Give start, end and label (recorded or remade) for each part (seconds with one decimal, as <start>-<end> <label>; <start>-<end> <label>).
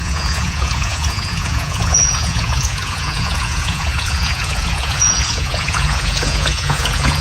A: 0.0-7.2 remade